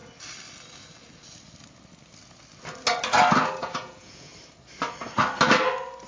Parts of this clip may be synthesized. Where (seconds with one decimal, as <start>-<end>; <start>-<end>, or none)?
3.6-4.3